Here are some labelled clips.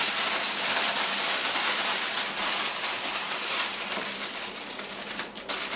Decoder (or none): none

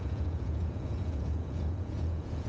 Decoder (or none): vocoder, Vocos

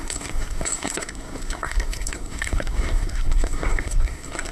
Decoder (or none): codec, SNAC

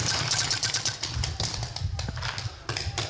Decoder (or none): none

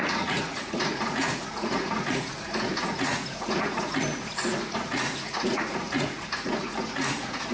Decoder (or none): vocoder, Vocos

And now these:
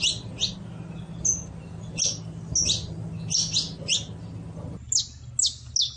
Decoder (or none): none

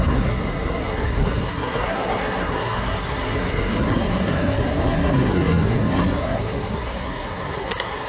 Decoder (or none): codec, SNAC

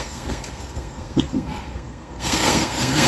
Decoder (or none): codec, SNAC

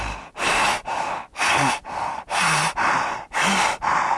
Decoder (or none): none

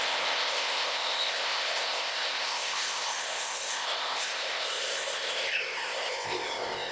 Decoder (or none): codec, ZipCodec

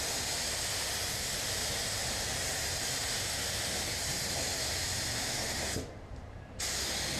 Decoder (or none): none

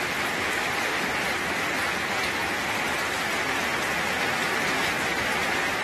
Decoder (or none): none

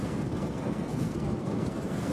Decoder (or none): codec, SNAC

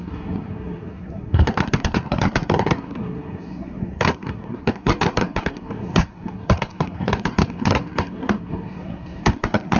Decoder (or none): codec, SNAC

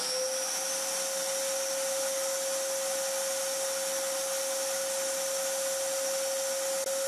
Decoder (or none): none